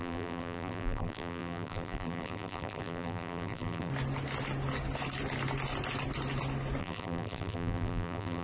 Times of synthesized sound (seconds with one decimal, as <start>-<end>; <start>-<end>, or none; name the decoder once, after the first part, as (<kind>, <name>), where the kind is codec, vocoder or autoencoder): 0.0-3.9 (vocoder, BigVGAN v2); 6.8-8.4